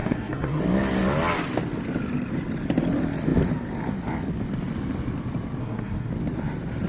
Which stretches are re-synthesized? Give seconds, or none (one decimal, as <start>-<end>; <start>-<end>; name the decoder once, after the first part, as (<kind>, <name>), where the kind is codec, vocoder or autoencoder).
0.0-0.6 (codec, SNAC); 5.6-6.1